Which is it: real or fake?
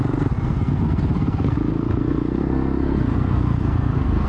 fake